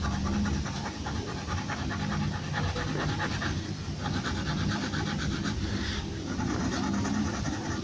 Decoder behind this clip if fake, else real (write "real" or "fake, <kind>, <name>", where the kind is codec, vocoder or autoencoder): real